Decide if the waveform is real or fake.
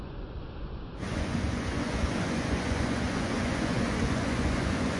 fake